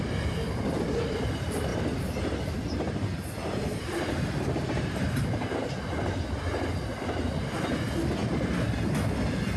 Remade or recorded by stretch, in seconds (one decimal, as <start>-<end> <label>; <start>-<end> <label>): 0.0-9.6 recorded